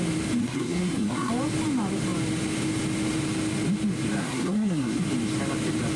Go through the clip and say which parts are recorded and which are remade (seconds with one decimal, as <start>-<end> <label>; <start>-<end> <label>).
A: 0.0-0.4 recorded; 0.4-1.3 remade; 1.3-4.2 recorded; 4.2-5.0 remade; 5.0-6.0 recorded